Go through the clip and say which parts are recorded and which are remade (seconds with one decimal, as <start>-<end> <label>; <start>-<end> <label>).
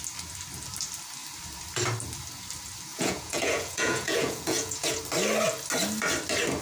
0.0-2.9 recorded; 2.9-5.0 remade; 5.0-6.6 recorded